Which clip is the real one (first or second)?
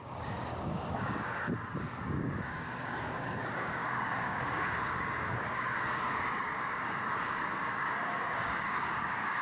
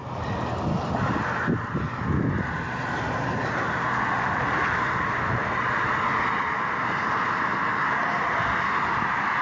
second